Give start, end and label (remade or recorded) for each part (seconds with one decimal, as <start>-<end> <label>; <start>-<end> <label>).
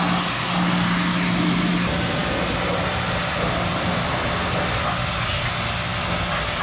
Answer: 0.0-6.6 recorded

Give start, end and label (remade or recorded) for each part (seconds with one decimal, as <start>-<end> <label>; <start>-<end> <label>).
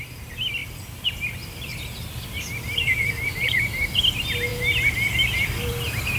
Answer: 0.0-0.6 recorded; 0.6-4.0 remade; 4.0-4.5 recorded; 4.5-5.7 remade; 5.7-6.2 recorded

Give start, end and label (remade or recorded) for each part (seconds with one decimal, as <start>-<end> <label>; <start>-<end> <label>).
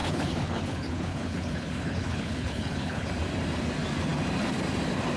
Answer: 0.0-3.1 remade; 3.1-5.2 recorded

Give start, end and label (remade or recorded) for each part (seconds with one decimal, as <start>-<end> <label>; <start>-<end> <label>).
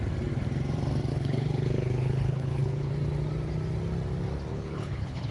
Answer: 0.0-1.1 recorded; 1.1-2.9 remade; 2.9-4.5 recorded; 4.5-5.3 remade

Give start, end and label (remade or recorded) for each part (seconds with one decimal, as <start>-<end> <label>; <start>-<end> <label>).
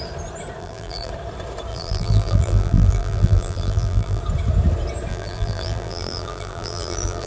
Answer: 0.0-0.6 recorded; 0.6-1.1 remade; 1.1-1.7 recorded; 1.7-4.2 remade; 4.2-5.1 recorded; 5.1-7.3 remade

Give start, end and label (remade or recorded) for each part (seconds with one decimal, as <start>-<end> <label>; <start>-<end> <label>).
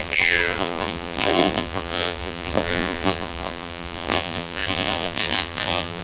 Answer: 0.0-6.0 remade